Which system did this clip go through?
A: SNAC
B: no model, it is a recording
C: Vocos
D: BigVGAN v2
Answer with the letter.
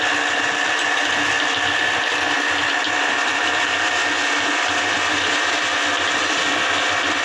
B